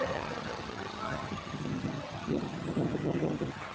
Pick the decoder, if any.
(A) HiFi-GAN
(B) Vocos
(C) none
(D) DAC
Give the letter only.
A